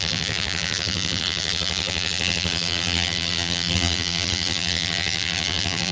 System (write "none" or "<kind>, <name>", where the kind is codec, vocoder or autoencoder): vocoder, BigVGAN v2